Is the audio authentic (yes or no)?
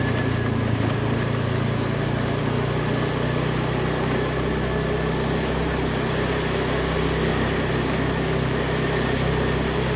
yes